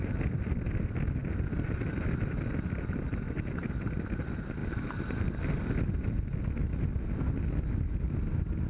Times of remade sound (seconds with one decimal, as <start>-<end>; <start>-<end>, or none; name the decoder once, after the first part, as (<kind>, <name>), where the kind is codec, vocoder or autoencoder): none